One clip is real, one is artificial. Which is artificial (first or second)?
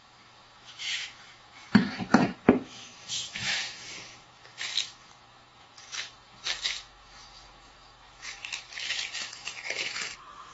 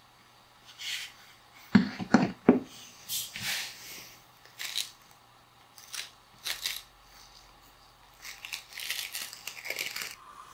first